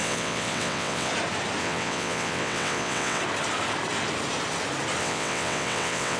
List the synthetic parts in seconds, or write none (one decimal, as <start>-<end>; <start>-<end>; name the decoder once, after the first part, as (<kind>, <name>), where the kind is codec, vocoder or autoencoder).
0.0-1.1 (vocoder, WaveNeXt); 1.6-3.2; 5.0-6.2